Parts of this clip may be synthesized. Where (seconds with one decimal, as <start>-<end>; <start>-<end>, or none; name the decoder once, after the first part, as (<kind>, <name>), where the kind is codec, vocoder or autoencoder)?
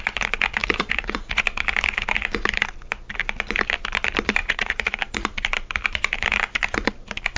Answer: 0.6-1.4 (vocoder, Vocos); 4.4-5.0